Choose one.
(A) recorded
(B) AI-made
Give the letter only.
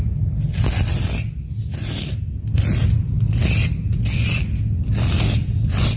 A